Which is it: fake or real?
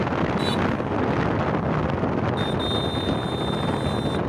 real